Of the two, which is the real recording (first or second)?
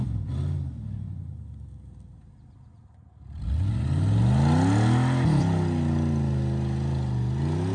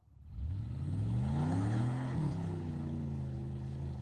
first